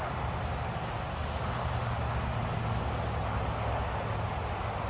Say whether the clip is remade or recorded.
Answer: recorded